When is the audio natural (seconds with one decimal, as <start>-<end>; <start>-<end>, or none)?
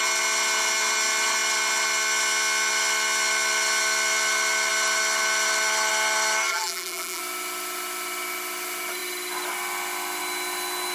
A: 0.0-6.5; 7.2-10.9